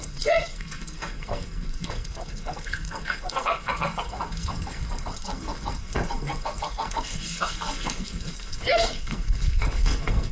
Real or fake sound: fake